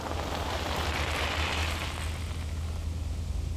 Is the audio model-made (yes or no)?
no